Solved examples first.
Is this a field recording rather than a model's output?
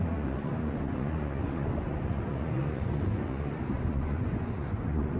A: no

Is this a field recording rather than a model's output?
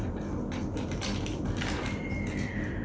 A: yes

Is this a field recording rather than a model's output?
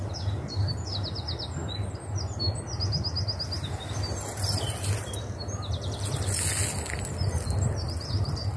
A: yes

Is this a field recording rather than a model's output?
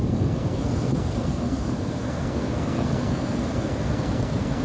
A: no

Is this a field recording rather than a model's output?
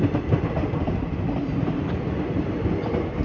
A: yes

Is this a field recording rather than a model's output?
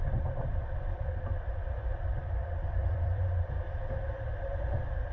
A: no